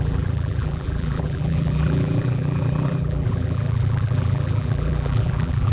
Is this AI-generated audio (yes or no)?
yes